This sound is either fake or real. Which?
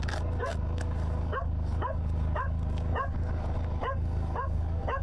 fake